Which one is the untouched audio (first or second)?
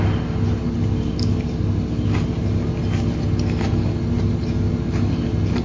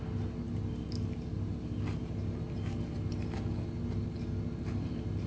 second